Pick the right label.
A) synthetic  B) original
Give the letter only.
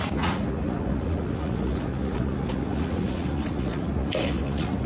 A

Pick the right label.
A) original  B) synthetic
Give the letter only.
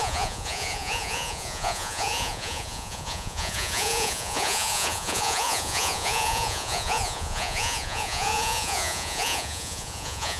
B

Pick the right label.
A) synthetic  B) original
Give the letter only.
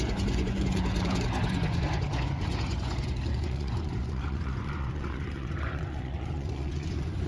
A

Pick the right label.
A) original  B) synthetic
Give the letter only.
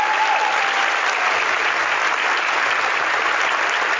A